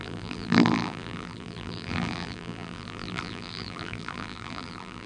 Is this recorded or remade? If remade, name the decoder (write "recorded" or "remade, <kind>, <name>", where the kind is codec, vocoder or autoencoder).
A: remade, vocoder, BigVGAN v2